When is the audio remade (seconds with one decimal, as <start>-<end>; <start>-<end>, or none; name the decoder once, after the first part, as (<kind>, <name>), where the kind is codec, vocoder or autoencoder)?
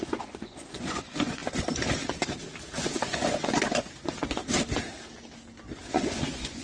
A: 0.0-1.4 (vocoder, Vocos); 2.8-4.4; 5.8-6.6